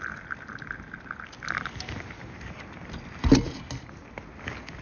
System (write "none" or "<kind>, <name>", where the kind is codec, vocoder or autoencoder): none